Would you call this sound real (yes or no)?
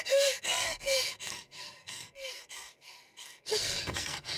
no